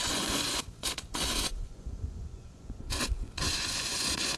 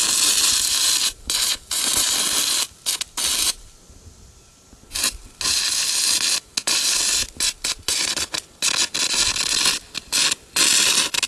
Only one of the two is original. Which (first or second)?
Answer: second